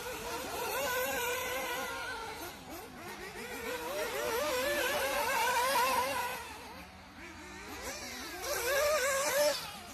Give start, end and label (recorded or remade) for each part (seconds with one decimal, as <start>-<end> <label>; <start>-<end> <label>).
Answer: 0.0-1.4 remade; 1.4-4.4 recorded; 4.4-6.3 remade; 6.3-9.9 recorded